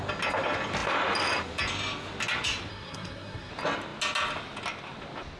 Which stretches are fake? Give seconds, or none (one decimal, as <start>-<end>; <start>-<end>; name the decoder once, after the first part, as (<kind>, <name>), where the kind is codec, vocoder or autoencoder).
2.7-3.5 (codec, SNAC)